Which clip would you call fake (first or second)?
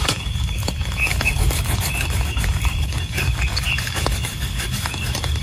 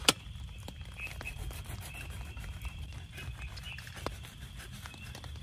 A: first